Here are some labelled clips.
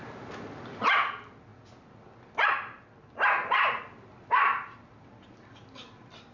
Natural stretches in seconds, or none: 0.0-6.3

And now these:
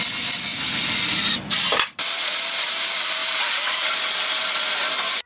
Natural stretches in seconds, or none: 0.0-5.3

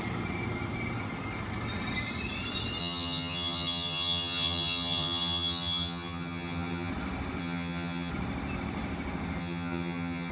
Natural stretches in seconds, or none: 0.0-2.8; 6.9-7.4; 8.1-9.4

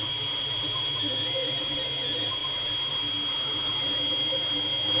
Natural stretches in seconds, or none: 0.0-5.0